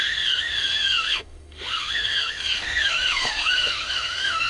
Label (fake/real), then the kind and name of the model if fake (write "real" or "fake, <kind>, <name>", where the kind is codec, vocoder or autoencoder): fake, autoencoder, DAC-VAE